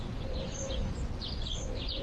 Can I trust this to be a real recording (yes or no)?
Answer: no